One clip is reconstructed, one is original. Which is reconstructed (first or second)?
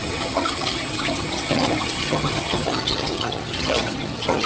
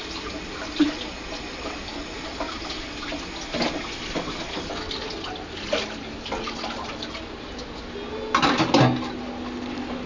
first